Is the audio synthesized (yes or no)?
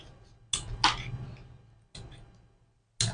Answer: no